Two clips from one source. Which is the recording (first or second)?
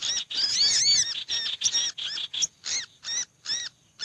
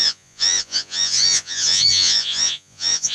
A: first